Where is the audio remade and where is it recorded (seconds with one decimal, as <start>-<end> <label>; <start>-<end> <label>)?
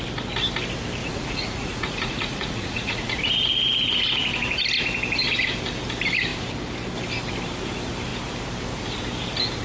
0.0-1.0 recorded; 1.0-3.2 remade; 3.2-9.6 recorded